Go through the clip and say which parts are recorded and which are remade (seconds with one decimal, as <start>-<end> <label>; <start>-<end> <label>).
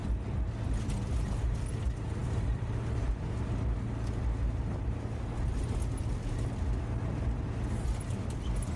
0.0-2.2 recorded; 2.2-3.1 remade; 3.1-8.8 recorded